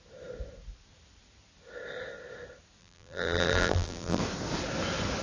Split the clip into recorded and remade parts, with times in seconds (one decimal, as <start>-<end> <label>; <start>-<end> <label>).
0.0-2.8 recorded; 2.8-4.2 remade; 4.2-5.2 recorded